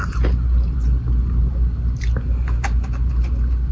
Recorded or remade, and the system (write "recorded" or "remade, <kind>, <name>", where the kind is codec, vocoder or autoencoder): recorded